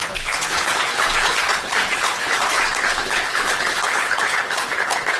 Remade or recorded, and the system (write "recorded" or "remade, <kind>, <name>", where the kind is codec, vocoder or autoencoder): remade, codec, HILCodec